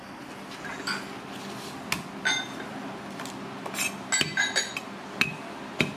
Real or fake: real